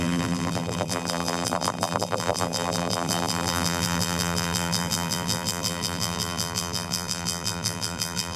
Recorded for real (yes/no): no